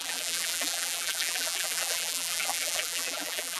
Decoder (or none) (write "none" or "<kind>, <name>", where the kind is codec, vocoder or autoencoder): vocoder, BigVGAN v2